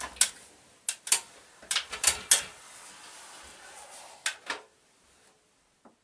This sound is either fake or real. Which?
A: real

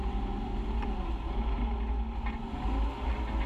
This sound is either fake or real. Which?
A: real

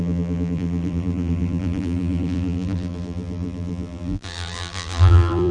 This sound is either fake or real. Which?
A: fake